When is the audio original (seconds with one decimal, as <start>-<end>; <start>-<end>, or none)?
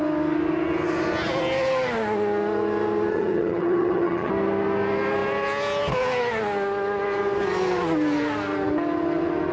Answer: 0.0-3.1; 4.3-9.5